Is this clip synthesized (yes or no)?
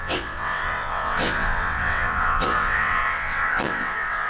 yes